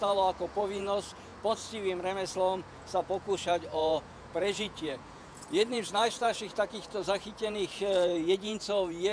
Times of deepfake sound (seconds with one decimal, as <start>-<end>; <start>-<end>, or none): 0.0-1.3; 2.3-9.1